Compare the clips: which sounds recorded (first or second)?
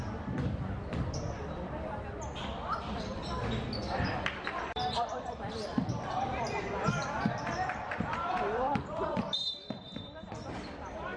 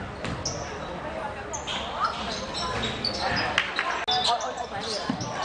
second